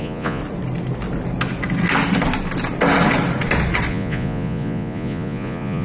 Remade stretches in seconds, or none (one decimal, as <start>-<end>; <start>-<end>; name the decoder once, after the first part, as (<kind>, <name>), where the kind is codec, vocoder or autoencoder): 0.0-0.4 (vocoder, Vocos); 3.9-5.8